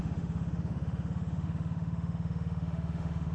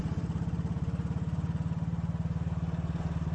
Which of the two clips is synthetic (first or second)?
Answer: first